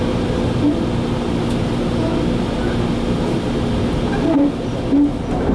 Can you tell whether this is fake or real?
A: real